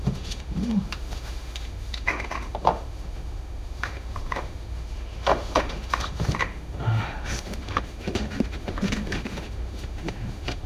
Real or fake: fake